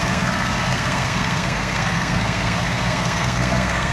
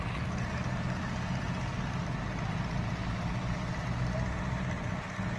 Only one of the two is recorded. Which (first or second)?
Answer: second